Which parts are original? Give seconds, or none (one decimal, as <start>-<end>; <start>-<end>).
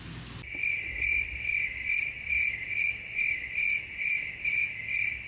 0.0-5.3